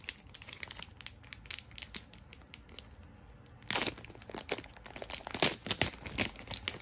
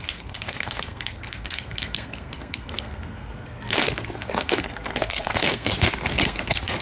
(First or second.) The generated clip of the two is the second